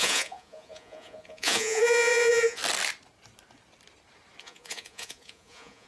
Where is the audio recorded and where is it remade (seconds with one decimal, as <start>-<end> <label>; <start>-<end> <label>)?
0.0-2.6 remade; 2.6-4.4 recorded; 4.4-5.9 remade